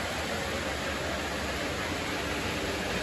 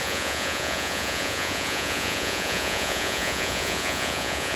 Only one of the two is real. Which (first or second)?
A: first